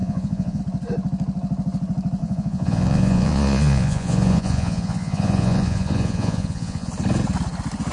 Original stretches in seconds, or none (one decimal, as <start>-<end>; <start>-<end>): 0.6-2.2; 6.9-7.9